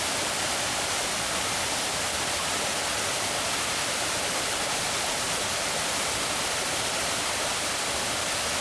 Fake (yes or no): no